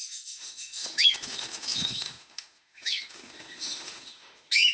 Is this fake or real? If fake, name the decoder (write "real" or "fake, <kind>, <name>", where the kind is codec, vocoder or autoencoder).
fake, autoencoder, DAC-VAE